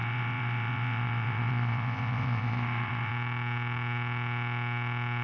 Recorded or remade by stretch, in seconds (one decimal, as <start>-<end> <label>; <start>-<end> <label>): 0.0-3.1 remade; 3.1-5.2 recorded